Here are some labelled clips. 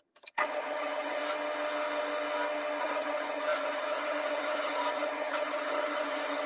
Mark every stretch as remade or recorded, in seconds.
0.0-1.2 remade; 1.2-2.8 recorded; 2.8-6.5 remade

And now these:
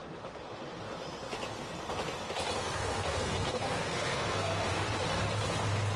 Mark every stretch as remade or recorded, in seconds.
0.0-2.6 recorded; 2.6-4.7 remade; 4.7-6.0 recorded